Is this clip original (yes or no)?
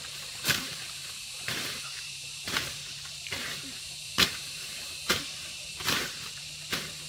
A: no